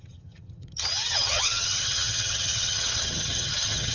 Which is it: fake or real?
fake